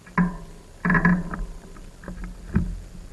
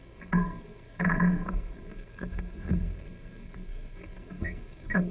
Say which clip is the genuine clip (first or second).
first